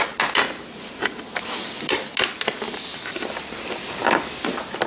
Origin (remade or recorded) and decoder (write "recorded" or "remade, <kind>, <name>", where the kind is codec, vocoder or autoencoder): recorded